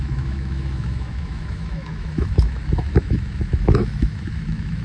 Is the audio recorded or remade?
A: remade